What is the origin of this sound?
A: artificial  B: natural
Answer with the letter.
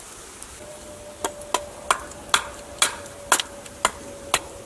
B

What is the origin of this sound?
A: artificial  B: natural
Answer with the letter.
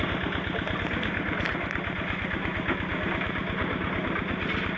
B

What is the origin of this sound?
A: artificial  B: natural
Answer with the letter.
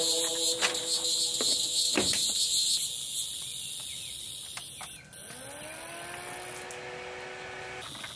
B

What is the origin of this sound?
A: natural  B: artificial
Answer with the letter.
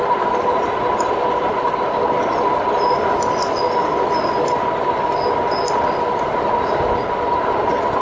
A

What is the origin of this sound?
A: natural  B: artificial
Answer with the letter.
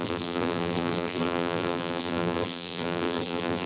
B